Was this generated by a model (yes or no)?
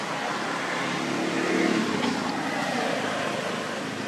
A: no